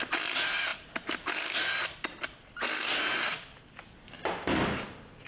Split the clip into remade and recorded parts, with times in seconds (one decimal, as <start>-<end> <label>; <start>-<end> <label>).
0.0-5.3 recorded